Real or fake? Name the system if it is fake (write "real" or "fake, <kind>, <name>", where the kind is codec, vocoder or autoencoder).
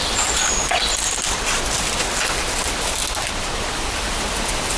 real